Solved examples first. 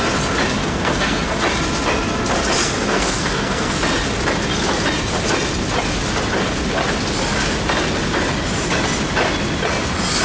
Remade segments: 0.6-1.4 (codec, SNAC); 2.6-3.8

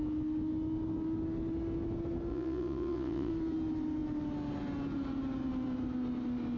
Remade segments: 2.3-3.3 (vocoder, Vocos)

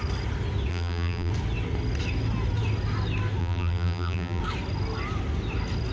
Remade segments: 0.7-1.3 (vocoder, BigVGAN v2); 3.4-4.4

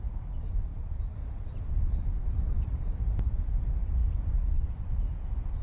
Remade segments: 0.0-5.6 (vocoder, BigVGAN v2)

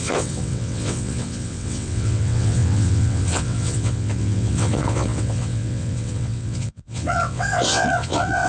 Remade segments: 0.0-8.5 (vocoder, WaveNeXt)